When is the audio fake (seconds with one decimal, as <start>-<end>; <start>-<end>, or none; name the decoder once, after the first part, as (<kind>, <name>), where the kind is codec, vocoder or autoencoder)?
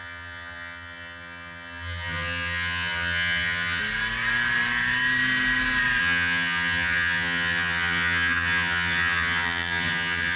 0.0-3.8 (vocoder, HiFi-GAN); 6.0-10.4